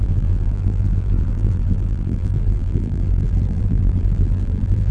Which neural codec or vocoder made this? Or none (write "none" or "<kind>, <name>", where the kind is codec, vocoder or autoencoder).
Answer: vocoder, BigVGAN v2